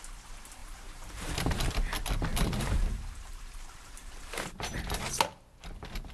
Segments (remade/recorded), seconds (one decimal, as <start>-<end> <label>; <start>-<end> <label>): 0.0-0.6 recorded; 0.6-1.7 remade; 1.7-2.3 recorded; 2.3-5.2 remade; 5.2-6.1 recorded

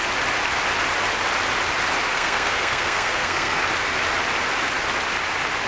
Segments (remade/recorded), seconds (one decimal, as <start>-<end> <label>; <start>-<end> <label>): 0.0-2.1 recorded; 2.1-3.6 remade; 3.6-5.7 recorded